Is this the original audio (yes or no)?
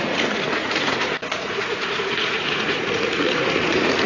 no